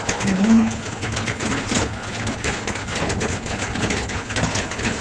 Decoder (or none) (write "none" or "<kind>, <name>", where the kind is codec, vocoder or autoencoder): codec, HILCodec